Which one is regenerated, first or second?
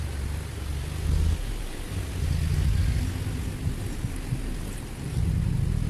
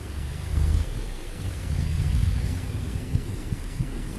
second